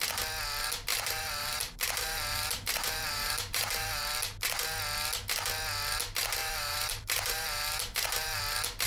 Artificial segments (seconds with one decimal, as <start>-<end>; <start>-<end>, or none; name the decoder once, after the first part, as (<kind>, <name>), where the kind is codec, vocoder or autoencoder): 0.9-4.0 (vocoder, BigVGAN v2); 6.4-8.4